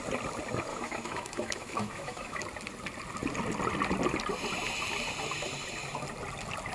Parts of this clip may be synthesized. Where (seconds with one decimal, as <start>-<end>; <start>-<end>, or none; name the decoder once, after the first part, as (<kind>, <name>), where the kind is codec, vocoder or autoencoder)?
0.7-2.4 (autoencoder, DAC-VAE)